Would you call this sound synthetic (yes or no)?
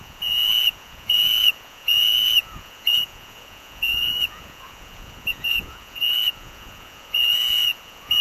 yes